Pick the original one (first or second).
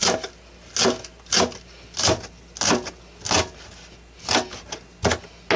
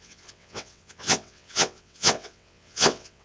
first